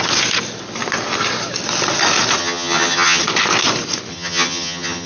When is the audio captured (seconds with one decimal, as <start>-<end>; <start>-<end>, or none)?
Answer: 0.0-2.4; 3.2-4.1